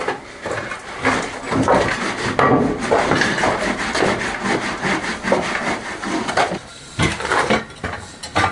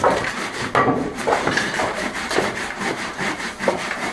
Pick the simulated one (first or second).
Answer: second